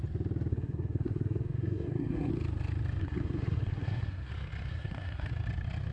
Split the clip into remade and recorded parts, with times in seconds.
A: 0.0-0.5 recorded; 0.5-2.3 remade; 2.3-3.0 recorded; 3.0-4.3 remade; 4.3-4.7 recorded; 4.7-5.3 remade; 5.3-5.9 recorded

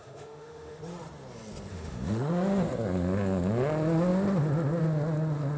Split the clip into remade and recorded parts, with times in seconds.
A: 0.0-0.8 remade; 0.8-1.7 recorded; 1.7-2.3 remade; 2.3-5.6 recorded

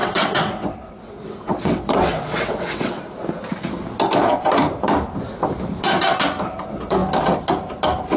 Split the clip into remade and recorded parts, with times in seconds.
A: 0.0-3.0 remade; 3.0-8.2 recorded

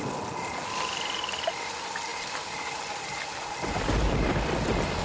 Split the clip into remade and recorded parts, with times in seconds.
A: 0.0-5.0 recorded